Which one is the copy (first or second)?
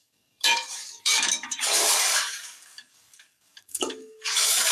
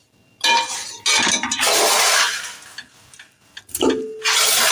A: first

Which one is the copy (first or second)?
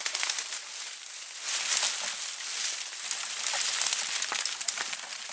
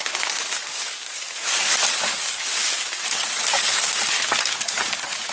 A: second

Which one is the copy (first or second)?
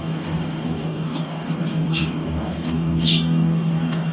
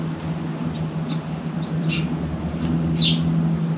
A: first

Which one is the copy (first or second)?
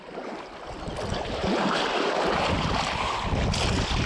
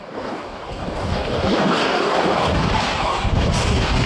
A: second